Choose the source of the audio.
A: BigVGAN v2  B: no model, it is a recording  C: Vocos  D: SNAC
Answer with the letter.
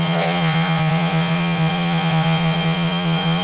C